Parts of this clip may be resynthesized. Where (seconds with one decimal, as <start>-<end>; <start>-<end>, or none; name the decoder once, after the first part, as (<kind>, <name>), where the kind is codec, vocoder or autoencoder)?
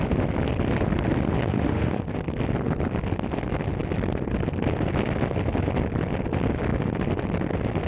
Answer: 1.4-2.0 (autoencoder, DAC-VAE)